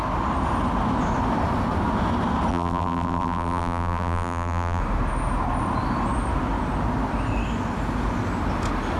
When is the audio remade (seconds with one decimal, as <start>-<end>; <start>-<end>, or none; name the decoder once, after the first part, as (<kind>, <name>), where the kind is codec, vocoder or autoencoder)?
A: 2.5-4.8 (vocoder, BigVGAN v2)